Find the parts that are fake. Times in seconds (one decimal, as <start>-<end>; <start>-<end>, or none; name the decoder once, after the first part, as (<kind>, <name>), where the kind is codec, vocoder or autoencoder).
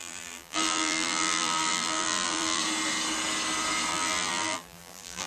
0.0-2.6 (vocoder, BigVGAN v2); 3.9-5.3